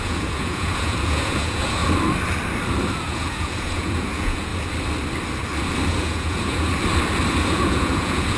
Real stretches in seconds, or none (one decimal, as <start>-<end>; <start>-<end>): 1.8-3.0; 4.5-5.9; 6.7-7.3